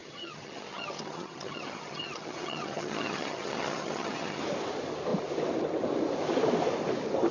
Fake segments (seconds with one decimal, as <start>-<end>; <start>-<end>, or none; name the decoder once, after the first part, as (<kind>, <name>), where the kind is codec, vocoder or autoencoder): 0.0-4.4 (vocoder, HiFi-GAN)